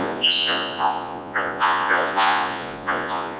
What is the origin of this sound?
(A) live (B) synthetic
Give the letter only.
B